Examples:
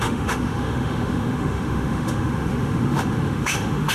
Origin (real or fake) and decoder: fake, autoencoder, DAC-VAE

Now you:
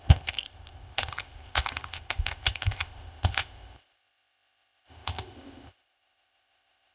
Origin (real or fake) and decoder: fake, codec, ZipCodec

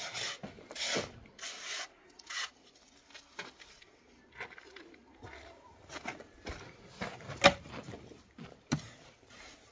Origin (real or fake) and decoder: real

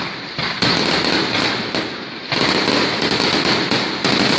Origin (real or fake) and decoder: real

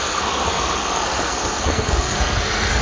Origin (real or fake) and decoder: fake, codec, SNAC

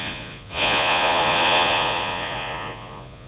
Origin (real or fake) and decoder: fake, vocoder, Vocos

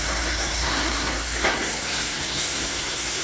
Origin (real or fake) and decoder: fake, codec, SNAC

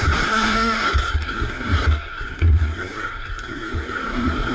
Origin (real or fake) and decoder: fake, codec, SNAC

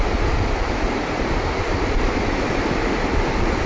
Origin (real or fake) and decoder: real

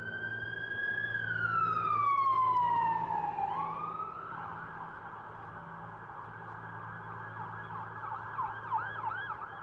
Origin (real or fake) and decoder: real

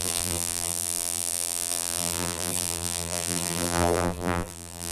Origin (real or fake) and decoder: fake, vocoder, BigVGAN v2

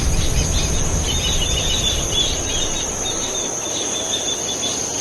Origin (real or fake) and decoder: real